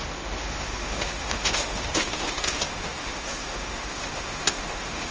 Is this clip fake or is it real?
fake